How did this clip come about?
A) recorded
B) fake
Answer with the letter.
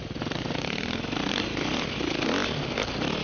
A